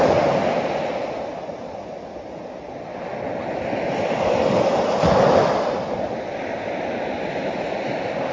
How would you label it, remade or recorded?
recorded